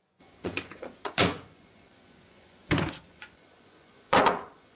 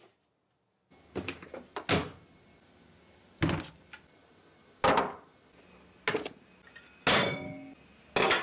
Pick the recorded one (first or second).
second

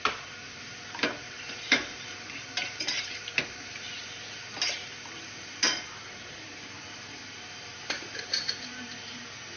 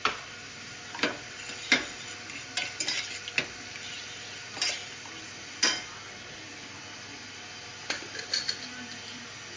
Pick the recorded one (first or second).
second